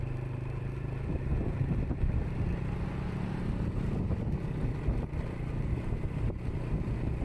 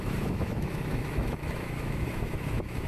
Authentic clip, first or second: first